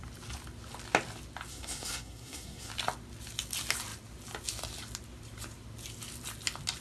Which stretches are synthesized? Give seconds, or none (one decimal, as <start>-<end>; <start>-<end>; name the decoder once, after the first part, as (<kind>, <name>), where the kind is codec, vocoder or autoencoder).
1.5-2.7 (codec, SNAC)

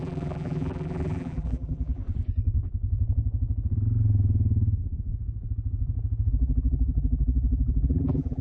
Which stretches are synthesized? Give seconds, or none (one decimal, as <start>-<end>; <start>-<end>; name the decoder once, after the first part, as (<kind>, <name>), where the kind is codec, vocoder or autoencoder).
0.0-2.0 (vocoder, BigVGAN v2); 6.3-8.4

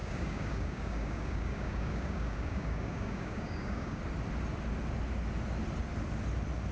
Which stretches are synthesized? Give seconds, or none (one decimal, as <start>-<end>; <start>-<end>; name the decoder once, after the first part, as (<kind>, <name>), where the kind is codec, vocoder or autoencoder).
0.0-4.0 (codec, DAC)

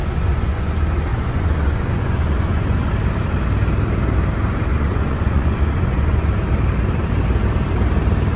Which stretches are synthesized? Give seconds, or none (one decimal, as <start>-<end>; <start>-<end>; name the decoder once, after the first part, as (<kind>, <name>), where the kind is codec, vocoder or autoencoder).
0.0-0.7 (vocoder, Vocos); 1.1-2.9; 4.7-6.3